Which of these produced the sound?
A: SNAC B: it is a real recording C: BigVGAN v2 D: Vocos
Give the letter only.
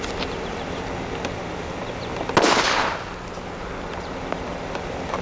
B